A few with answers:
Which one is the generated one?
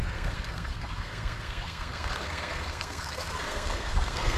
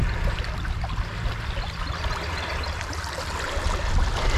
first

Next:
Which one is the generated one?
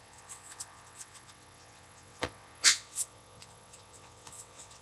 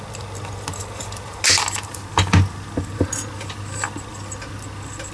first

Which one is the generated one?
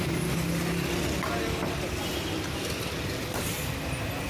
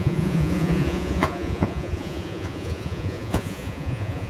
second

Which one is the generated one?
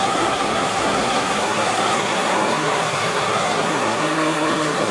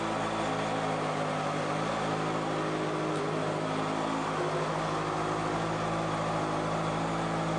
first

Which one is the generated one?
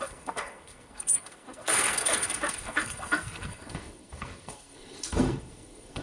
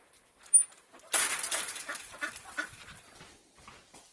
first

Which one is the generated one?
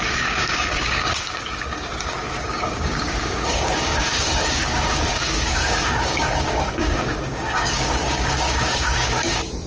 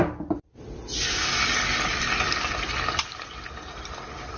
first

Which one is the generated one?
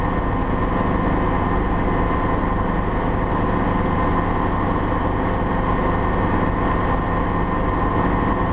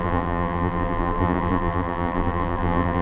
second